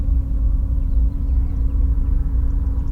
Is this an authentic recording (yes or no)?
no